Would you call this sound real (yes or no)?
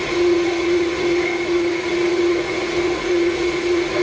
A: no